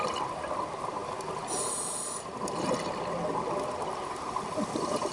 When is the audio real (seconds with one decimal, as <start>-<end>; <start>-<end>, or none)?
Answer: 0.0-5.1